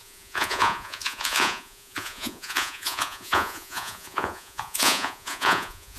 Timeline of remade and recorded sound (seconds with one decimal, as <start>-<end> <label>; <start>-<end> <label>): 0.0-6.0 remade